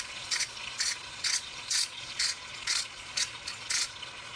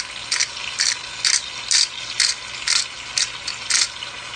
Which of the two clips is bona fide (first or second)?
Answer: second